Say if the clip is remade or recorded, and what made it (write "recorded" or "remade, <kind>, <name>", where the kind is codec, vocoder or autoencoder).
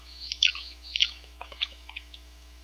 remade, autoencoder, DAC-VAE